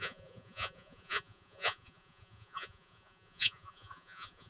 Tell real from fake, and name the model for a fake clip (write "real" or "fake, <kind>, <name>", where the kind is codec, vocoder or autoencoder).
fake, vocoder, Vocos